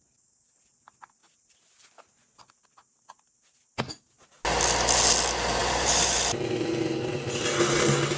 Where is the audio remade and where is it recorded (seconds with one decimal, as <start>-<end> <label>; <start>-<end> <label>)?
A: 0.0-5.6 recorded; 5.6-7.4 remade; 7.4-8.2 recorded